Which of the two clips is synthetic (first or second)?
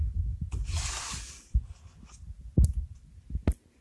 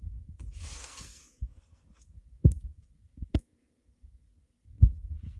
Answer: second